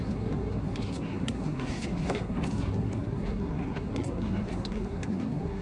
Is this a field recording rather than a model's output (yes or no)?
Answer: no